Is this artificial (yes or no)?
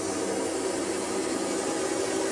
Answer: no